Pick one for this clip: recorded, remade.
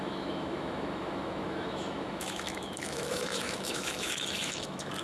remade